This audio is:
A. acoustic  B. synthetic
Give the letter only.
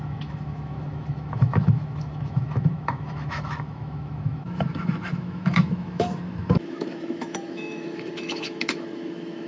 B